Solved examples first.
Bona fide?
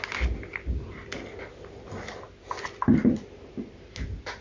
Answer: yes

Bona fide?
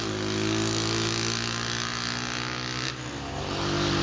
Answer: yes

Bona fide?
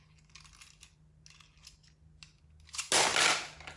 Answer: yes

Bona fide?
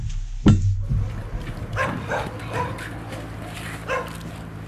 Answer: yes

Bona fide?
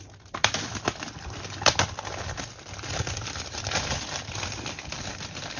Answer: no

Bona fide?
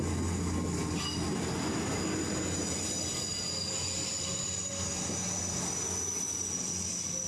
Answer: yes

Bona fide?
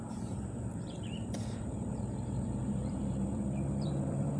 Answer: no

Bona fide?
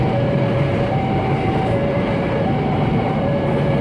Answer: no